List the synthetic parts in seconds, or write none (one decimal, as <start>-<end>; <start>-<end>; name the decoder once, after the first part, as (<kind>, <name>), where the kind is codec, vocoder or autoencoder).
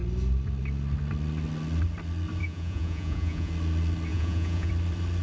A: 2.4-3.5 (vocoder, Vocos); 4.1-4.7